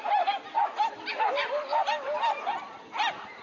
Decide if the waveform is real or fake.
real